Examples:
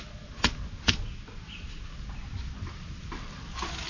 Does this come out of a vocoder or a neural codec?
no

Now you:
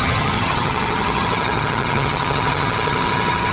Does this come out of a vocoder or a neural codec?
yes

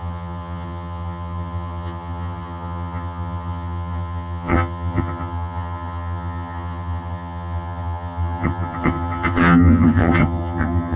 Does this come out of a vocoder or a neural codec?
yes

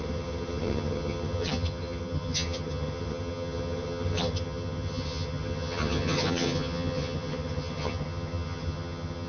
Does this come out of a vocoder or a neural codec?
yes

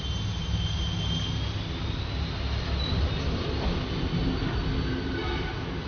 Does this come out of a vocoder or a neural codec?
no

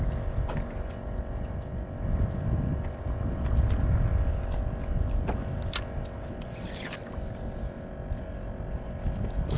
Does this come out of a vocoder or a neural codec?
no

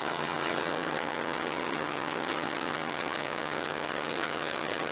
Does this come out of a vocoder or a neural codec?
yes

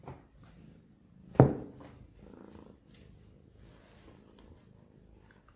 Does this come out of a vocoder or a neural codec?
no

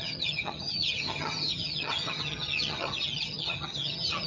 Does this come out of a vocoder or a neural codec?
yes